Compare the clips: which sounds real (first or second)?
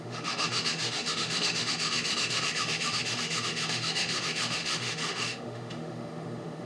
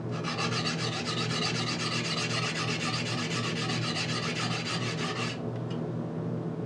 second